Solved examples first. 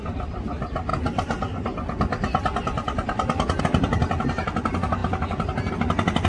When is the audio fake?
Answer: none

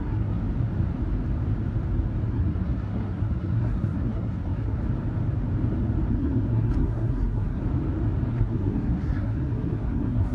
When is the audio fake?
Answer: 0.0-0.4 (codec, SNAC); 2.3-4.8; 6.1-7.6; 8.3-10.3

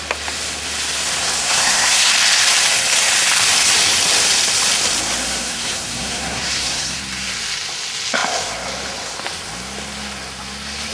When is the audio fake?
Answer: 1.4-2.1 (codec, SNAC); 5.2-7.0

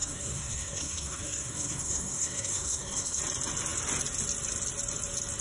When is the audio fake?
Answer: 0.0-3.2 (codec, SNAC)

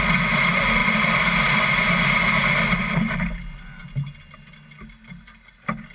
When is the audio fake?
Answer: none